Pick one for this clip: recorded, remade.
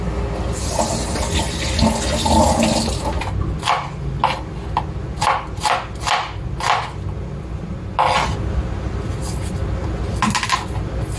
recorded